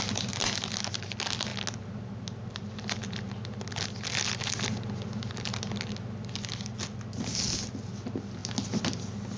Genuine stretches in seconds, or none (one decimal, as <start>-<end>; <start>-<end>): 0.0-9.4